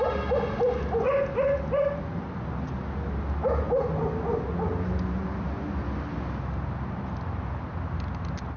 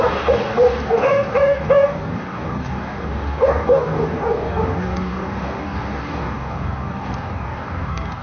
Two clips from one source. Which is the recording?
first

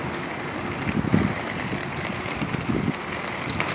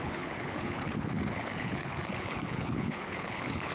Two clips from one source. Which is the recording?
first